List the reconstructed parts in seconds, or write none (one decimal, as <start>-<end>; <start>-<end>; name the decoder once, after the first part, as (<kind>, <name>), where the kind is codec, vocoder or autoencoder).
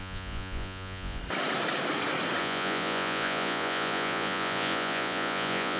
0.0-1.2 (vocoder, Vocos); 2.4-5.8